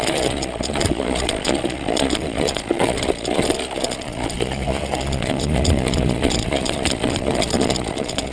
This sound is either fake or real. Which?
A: fake